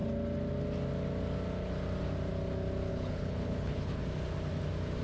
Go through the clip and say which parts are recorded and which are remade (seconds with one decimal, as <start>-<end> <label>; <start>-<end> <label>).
0.0-2.9 recorded; 2.9-4.0 remade; 4.0-5.0 recorded